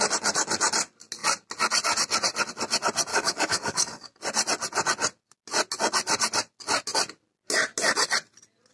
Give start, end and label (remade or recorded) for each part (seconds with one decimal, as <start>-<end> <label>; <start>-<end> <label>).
0.0-3.1 recorded; 3.1-4.2 remade; 4.2-8.7 recorded